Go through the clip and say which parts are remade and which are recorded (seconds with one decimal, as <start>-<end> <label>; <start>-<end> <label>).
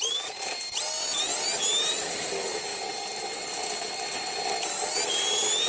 0.0-5.7 recorded